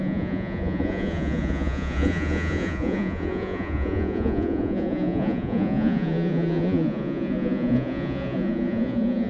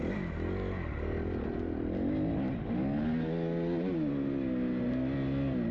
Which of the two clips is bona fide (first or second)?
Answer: second